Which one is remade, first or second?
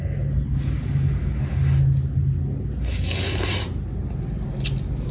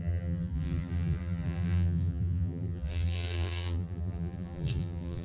second